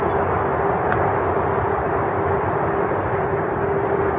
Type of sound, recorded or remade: recorded